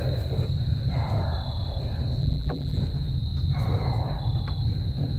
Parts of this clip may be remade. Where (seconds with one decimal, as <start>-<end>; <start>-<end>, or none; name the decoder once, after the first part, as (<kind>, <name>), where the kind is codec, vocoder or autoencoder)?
2.2-2.8 (vocoder, BigVGAN v2)